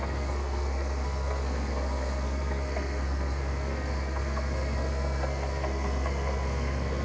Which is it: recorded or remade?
remade